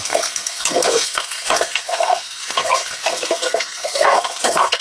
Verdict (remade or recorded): remade